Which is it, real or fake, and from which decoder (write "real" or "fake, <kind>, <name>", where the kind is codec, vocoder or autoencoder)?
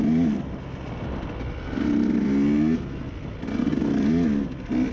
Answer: real